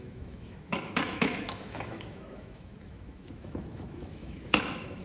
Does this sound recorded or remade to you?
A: remade